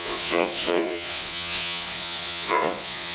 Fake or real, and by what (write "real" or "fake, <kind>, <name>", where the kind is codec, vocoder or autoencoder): fake, vocoder, Vocos